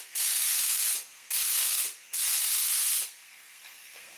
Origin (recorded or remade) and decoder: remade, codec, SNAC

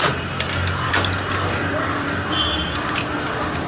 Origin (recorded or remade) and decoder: remade, vocoder, BigVGAN v2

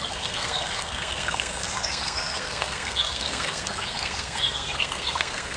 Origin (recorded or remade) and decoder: remade, codec, SNAC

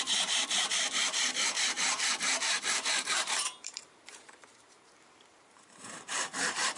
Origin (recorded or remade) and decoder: remade, vocoder, BigVGAN v2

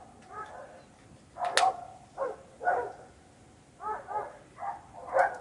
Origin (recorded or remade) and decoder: recorded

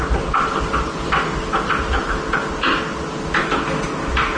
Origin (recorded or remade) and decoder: recorded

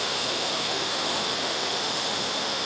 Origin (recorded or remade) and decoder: remade, autoencoder, DAC-VAE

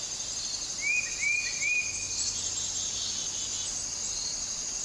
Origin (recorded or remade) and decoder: recorded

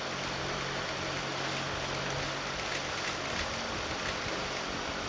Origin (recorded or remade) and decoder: recorded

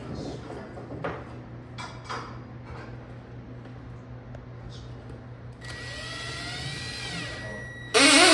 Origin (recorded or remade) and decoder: recorded